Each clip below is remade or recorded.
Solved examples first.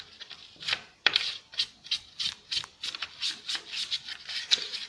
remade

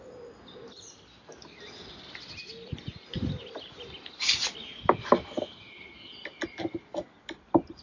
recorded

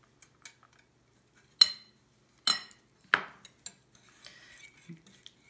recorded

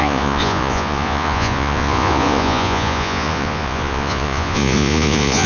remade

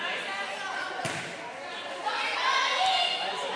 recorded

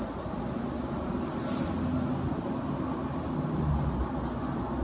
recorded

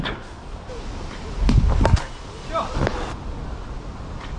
recorded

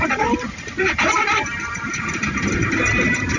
remade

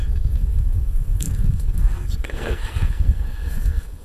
remade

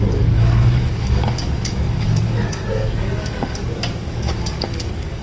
remade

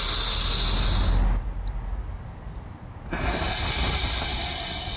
recorded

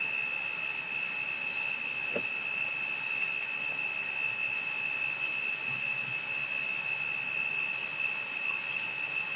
recorded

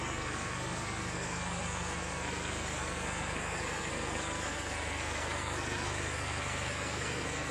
remade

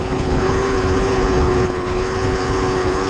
remade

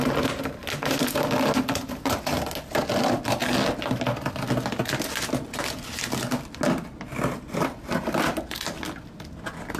recorded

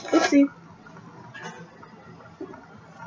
recorded